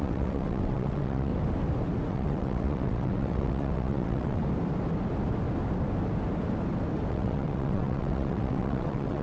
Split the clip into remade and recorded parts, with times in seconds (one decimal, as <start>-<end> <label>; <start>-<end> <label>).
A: 0.0-1.3 remade; 1.3-2.1 recorded; 2.1-4.4 remade; 4.4-7.1 recorded; 7.1-9.2 remade